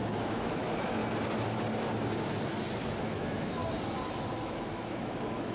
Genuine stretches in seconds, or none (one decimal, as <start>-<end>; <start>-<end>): 1.0-3.0; 3.6-4.4